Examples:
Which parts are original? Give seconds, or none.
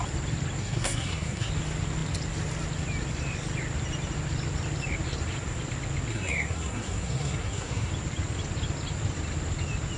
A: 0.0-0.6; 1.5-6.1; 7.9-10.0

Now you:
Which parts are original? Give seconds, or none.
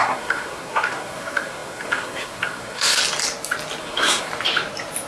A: 3.0-3.8; 4.3-5.1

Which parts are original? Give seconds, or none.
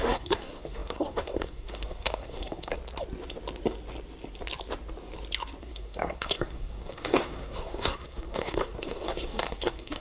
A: 2.8-5.6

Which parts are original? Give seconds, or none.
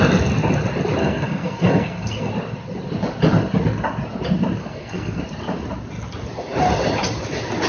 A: 0.0-1.0; 2.3-4.6; 5.2-7.7